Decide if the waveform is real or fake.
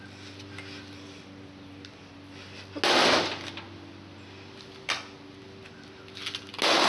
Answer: real